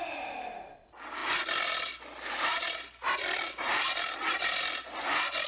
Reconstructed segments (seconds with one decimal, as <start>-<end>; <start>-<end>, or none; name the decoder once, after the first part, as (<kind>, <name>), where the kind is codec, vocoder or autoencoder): none